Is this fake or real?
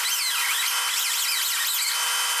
real